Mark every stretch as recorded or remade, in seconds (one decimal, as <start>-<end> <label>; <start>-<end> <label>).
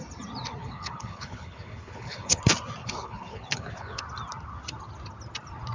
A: 0.0-0.6 recorded; 0.6-2.4 remade; 2.4-2.8 recorded; 2.8-4.0 remade; 4.0-5.7 recorded